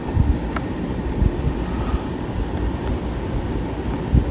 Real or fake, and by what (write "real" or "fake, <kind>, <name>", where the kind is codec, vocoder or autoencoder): real